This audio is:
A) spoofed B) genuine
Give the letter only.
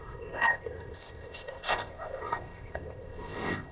A